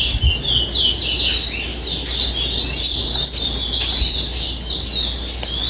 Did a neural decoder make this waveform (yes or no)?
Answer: no